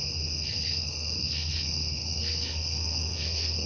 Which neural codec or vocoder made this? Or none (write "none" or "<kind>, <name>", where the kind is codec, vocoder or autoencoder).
codec, SNAC